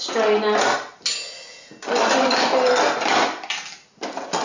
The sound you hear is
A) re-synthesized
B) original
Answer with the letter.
B